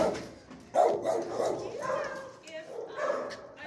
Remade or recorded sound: recorded